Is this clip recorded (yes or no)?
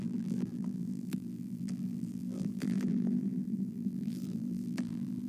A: no